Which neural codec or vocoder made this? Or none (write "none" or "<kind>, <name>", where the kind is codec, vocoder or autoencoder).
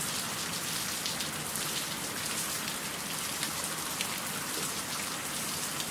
none